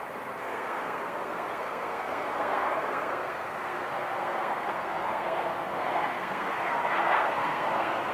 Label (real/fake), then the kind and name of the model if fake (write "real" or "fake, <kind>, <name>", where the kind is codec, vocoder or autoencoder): fake, codec, SNAC